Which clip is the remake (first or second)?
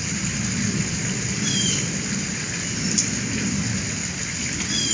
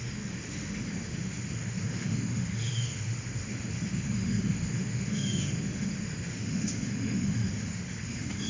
second